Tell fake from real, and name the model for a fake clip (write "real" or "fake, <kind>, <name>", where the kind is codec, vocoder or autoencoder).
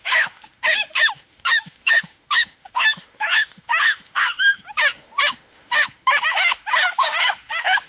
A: fake, autoencoder, DAC-VAE